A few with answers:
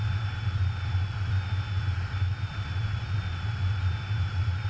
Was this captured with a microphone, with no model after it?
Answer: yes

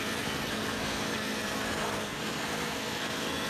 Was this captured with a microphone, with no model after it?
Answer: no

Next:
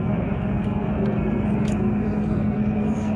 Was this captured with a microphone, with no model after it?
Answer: no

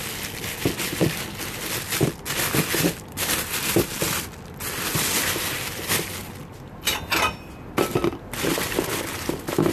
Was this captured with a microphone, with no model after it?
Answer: yes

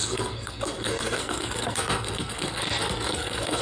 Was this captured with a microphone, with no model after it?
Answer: no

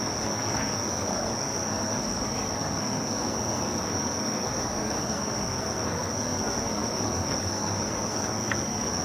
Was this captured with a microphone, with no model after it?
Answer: no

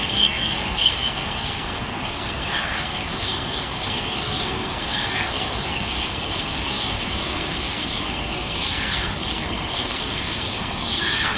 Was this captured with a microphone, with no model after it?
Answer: no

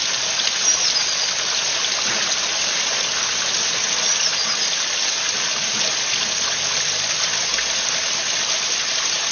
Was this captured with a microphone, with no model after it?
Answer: yes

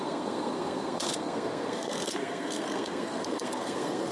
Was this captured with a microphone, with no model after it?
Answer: no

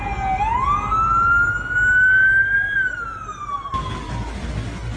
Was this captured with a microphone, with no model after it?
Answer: yes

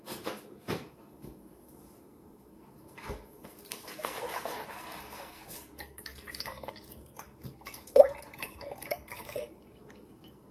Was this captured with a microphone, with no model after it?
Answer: no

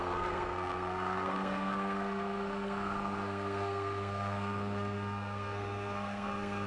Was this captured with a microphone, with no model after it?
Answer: no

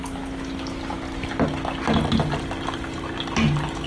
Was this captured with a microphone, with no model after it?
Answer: yes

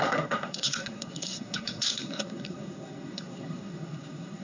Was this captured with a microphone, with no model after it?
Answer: no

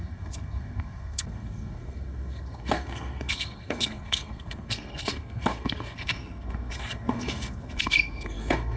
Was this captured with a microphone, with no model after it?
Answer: no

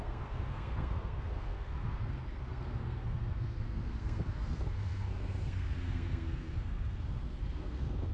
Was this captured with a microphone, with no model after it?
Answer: no